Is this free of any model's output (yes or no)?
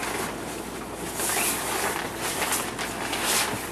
yes